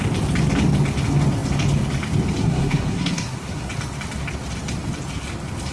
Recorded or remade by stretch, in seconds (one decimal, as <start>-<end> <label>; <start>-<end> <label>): 0.0-2.4 recorded; 2.4-3.7 remade; 3.7-5.7 recorded